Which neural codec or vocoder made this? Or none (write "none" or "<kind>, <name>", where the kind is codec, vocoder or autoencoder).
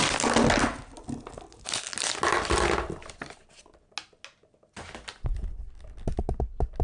none